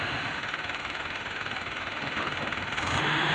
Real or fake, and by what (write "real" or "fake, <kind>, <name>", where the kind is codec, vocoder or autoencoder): fake, autoencoder, DAC-VAE